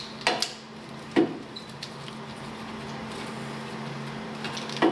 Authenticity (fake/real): real